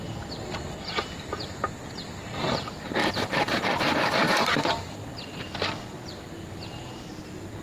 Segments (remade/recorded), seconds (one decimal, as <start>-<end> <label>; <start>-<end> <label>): 0.0-3.0 recorded; 3.0-7.6 remade